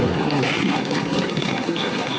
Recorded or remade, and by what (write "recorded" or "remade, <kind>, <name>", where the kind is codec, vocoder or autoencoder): remade, codec, SNAC